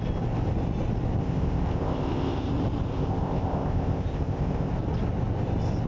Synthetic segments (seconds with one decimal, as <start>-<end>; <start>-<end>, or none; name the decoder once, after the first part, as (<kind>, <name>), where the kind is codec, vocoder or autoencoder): 1.2-2.5 (codec, ZipCodec); 2.9-4.7